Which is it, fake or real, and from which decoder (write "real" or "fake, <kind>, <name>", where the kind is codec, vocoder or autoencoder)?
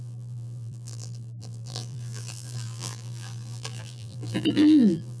fake, vocoder, BigVGAN v2